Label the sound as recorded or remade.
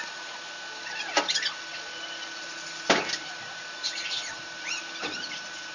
recorded